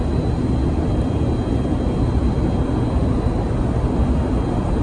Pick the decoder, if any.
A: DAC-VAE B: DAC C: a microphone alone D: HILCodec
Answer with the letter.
C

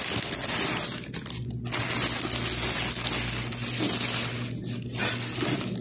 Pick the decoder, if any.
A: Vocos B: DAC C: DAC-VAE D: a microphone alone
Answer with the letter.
D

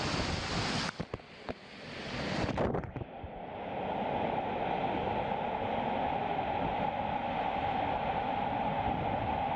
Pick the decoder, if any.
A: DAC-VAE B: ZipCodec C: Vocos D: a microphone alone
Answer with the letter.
D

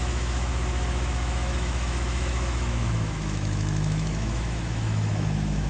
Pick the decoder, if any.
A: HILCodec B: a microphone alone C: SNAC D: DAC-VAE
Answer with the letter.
D